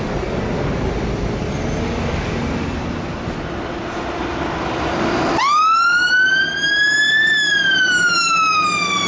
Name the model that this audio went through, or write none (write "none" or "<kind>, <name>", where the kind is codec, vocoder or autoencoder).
none